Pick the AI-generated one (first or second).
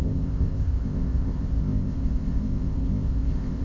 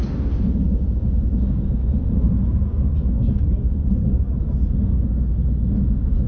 first